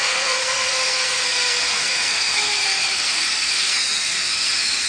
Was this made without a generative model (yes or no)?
no